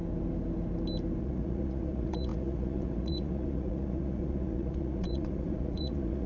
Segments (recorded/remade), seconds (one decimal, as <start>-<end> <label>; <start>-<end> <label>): 0.0-1.2 recorded; 1.2-6.3 remade